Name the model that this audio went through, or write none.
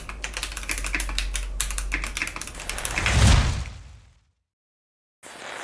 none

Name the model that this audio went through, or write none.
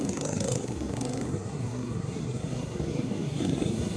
codec, SNAC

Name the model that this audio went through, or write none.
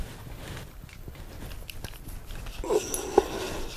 none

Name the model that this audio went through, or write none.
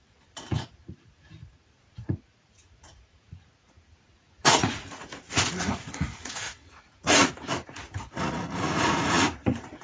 vocoder, Vocos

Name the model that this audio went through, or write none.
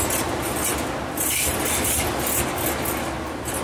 none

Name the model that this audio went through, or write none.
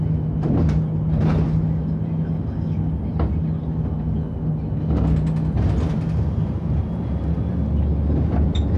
none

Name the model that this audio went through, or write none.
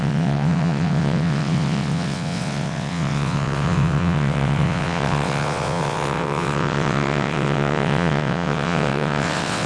vocoder, WaveNeXt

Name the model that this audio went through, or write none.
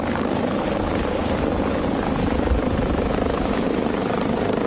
vocoder, BigVGAN v2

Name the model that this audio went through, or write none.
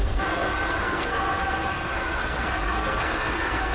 codec, SNAC